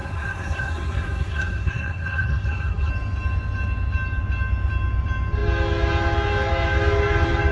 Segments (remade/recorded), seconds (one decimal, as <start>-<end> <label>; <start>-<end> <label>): 0.0-2.9 remade; 2.9-7.5 recorded